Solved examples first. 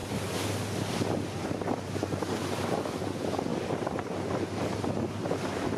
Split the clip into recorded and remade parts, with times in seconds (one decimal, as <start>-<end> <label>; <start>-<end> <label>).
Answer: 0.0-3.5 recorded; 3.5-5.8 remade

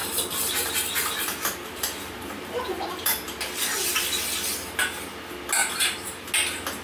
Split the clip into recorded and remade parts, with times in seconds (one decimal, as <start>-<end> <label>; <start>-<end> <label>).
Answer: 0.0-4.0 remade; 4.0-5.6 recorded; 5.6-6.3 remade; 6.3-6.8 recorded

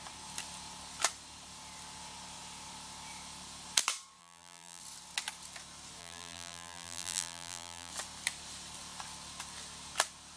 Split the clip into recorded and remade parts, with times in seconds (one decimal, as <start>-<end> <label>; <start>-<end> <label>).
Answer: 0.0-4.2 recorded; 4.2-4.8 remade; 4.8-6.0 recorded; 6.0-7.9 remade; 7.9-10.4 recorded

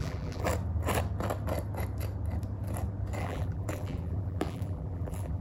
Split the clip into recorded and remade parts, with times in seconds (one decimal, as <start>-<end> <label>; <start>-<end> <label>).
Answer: 0.0-0.5 remade; 0.5-3.2 recorded; 3.2-5.4 remade